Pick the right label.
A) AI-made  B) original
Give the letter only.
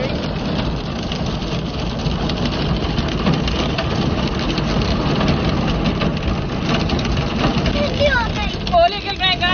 B